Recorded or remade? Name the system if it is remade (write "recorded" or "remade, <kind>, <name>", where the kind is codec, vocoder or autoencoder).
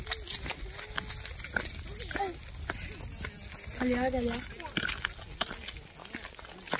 recorded